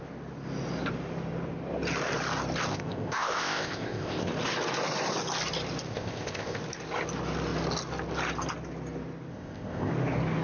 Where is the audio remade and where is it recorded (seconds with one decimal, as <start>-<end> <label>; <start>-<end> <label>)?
0.0-2.7 recorded; 2.7-4.3 remade; 4.3-5.9 recorded; 5.9-6.6 remade; 6.6-9.3 recorded; 9.3-9.9 remade; 9.9-10.4 recorded